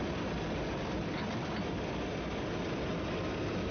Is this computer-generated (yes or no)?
no